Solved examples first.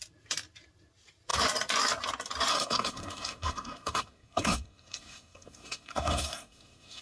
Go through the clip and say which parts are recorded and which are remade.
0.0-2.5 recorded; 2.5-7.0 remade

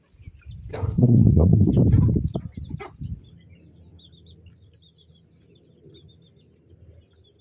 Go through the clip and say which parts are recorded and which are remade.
0.0-0.7 recorded; 0.7-1.7 remade; 1.7-7.4 recorded

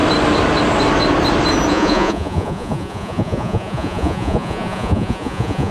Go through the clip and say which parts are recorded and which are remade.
0.0-1.7 recorded; 1.7-5.7 remade

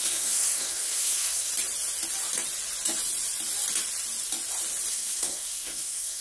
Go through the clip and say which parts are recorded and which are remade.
0.0-1.5 remade; 1.5-4.9 recorded; 4.9-6.2 remade

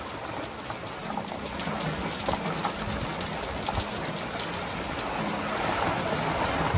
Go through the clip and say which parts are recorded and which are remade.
0.0-6.8 recorded

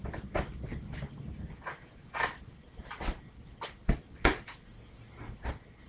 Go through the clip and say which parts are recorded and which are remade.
0.0-5.9 recorded

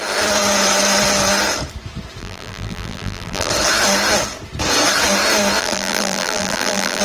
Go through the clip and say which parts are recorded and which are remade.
0.0-2.2 recorded; 2.2-3.5 remade; 3.5-5.6 recorded; 5.6-7.0 remade

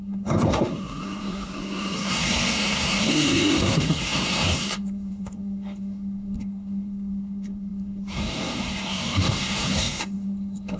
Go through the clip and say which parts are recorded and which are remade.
0.0-10.8 remade